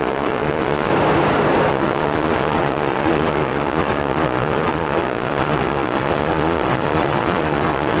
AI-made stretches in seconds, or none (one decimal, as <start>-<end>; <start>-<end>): 0.0-0.9; 1.7-8.0